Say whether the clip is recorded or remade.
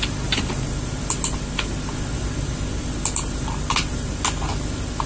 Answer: recorded